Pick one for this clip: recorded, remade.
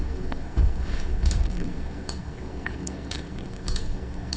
remade